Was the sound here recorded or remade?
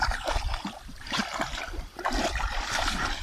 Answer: remade